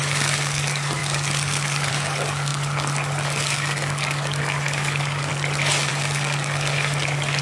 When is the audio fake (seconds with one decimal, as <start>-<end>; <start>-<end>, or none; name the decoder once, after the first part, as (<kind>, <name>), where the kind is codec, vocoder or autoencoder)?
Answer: 0.0-5.3 (codec, DAC); 5.9-7.4